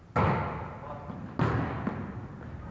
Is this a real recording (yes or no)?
yes